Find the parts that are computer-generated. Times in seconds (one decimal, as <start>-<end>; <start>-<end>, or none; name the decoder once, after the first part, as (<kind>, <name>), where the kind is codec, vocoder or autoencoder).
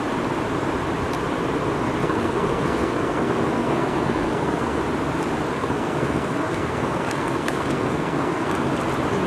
2.0-4.8 (codec, SNAC); 5.5-8.7